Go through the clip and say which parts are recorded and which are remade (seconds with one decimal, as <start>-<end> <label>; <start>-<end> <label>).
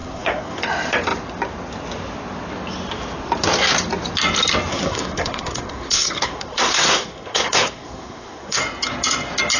0.0-0.6 remade; 0.6-4.7 recorded; 4.7-8.6 remade; 8.6-9.6 recorded